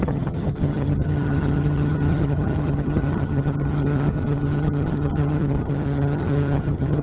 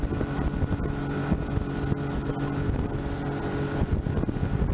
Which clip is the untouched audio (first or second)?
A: second